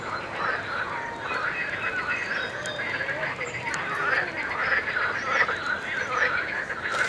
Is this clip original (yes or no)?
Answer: yes